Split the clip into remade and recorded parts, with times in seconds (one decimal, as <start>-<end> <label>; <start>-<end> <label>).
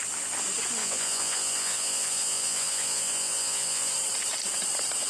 0.0-0.8 recorded; 0.8-3.9 remade; 3.9-5.1 recorded